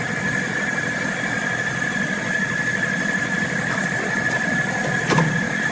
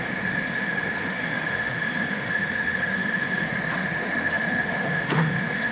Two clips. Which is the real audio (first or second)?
first